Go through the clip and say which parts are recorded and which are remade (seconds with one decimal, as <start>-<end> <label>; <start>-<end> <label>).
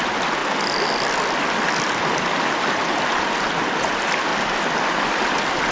0.0-5.7 recorded